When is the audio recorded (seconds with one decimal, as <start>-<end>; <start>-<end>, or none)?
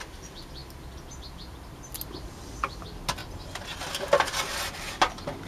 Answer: 0.0-5.5